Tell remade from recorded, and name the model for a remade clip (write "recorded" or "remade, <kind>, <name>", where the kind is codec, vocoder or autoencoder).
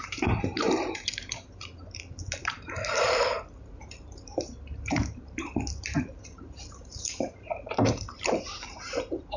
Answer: remade, vocoder, BigVGAN v2